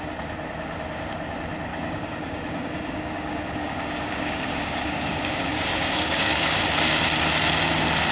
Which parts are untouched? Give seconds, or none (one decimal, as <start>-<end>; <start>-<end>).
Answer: 0.0-1.7; 6.6-8.1